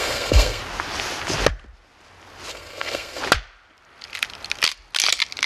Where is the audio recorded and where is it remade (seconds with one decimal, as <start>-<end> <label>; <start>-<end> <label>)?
0.0-0.6 remade; 0.6-2.5 recorded; 2.5-3.2 remade; 3.2-5.5 recorded